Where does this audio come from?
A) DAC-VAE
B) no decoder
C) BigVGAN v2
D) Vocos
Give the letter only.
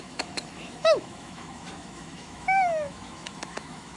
A